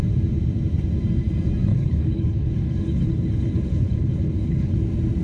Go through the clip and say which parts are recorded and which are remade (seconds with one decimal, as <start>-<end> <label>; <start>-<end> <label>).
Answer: 0.0-1.7 recorded; 1.7-4.8 remade; 4.8-5.2 recorded